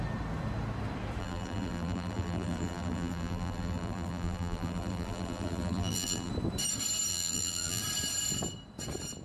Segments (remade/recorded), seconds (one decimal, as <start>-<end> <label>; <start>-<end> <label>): 0.0-1.2 recorded; 1.2-6.3 remade; 6.3-7.1 recorded; 7.1-7.8 remade; 7.8-9.2 recorded

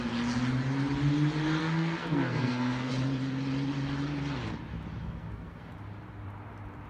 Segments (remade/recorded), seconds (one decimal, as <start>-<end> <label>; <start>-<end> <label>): 0.0-1.6 recorded; 1.6-2.9 remade; 2.9-5.0 recorded; 5.0-5.7 remade; 5.7-6.9 recorded